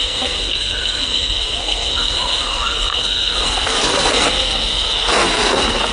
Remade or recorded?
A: remade